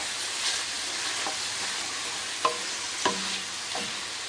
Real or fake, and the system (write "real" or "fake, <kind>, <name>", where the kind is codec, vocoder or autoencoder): real